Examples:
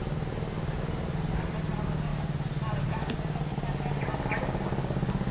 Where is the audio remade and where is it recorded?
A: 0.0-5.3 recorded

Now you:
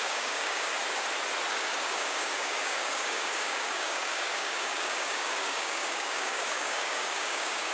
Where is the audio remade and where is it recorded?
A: 0.0-0.7 remade; 0.7-1.5 recorded; 1.5-7.7 remade

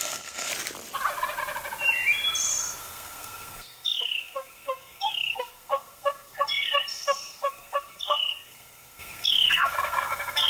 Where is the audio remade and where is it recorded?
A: 0.0-0.5 remade; 0.5-2.8 recorded; 2.8-10.5 remade

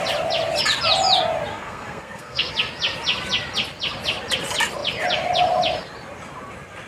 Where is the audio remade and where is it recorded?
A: 0.0-1.5 recorded; 1.5-2.5 remade; 2.5-6.9 recorded

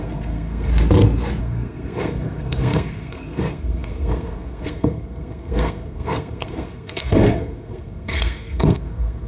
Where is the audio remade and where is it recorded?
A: 0.0-0.7 remade; 0.7-1.4 recorded; 1.4-9.3 remade

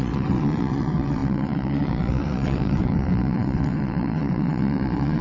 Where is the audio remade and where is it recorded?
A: 0.0-5.2 remade